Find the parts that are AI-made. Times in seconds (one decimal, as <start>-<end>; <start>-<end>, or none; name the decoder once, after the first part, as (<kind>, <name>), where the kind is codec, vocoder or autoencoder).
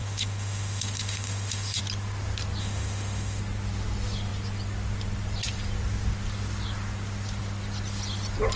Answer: 0.0-1.8 (autoencoder, DAC-VAE); 2.6-3.4